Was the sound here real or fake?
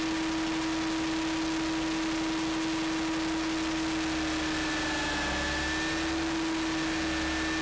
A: real